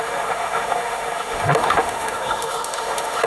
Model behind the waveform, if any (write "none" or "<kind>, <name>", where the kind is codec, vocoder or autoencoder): autoencoder, DAC-VAE